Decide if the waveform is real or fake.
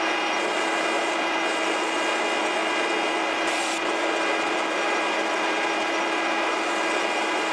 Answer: real